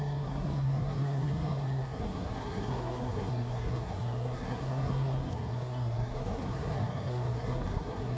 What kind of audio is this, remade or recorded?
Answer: remade